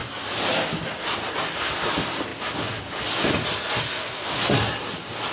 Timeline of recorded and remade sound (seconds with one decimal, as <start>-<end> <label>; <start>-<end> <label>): 0.0-5.3 recorded